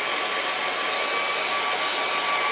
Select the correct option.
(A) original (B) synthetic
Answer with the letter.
A